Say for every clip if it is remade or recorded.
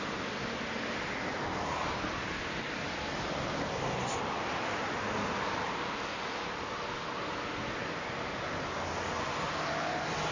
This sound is recorded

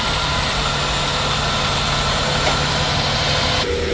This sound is recorded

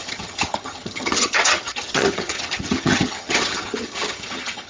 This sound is remade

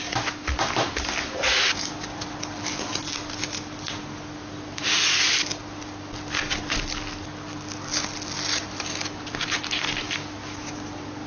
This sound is recorded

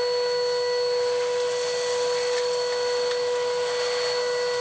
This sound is recorded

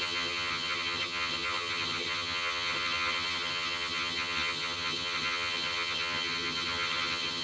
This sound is remade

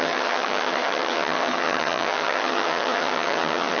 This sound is remade